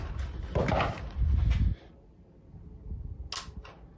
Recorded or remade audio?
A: recorded